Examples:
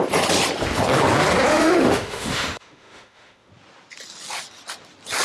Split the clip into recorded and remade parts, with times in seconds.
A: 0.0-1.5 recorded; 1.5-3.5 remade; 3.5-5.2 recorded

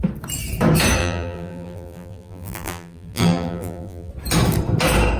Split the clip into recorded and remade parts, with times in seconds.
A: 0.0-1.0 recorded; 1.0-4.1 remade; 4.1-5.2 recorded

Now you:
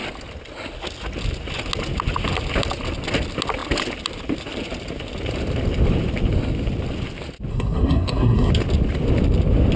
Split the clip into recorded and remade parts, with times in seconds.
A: 0.0-7.5 recorded; 7.5-8.5 remade; 8.5-9.8 recorded

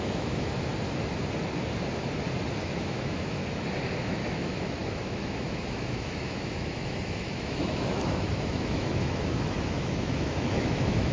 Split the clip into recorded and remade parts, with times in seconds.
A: 0.0-0.7 remade; 0.7-2.6 recorded; 2.6-3.4 remade; 3.4-4.0 recorded; 4.0-11.1 remade